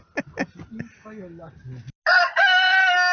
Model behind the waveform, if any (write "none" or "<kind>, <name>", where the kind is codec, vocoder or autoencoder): none